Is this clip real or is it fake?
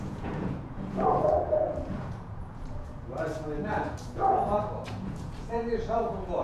fake